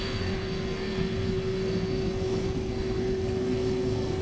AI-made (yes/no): yes